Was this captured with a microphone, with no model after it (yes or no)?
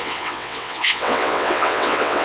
no